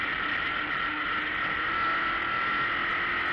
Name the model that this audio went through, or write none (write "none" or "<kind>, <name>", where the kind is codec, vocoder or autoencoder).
none